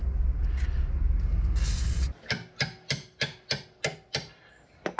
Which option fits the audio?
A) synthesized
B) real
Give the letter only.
B